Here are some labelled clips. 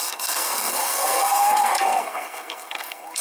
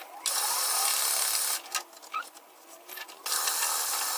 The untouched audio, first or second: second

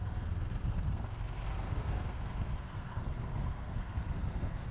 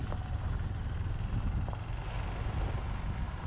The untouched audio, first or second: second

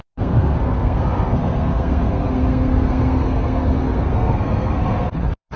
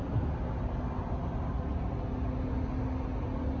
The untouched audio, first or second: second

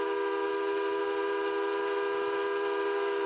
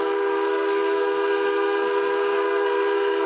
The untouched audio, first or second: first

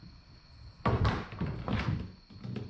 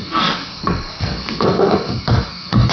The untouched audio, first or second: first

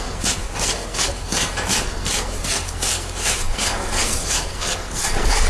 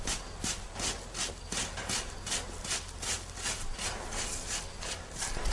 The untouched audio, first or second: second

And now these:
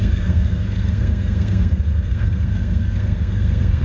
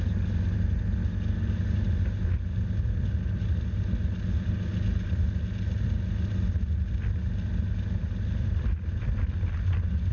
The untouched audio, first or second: second